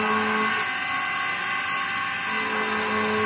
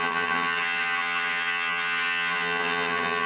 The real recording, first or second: first